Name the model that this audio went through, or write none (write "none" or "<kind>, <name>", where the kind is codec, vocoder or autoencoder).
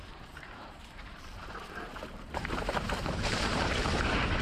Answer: vocoder, BigVGAN v2